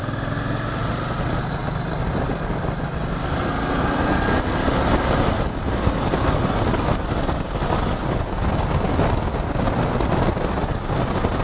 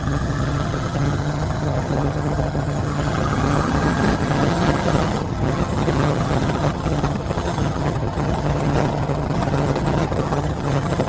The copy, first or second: second